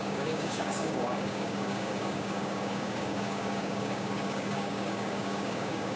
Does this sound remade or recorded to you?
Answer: remade